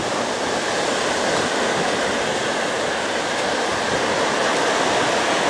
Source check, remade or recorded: recorded